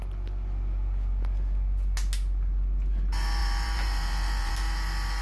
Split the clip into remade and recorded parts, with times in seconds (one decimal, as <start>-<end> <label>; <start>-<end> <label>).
0.0-3.4 recorded; 3.4-4.5 remade; 4.5-5.2 recorded